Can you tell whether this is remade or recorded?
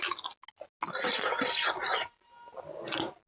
recorded